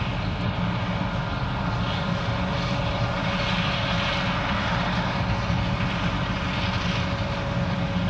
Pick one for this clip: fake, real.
real